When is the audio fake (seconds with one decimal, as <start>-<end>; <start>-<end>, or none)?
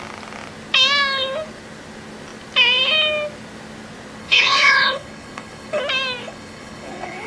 4.2-5.8; 6.2-7.3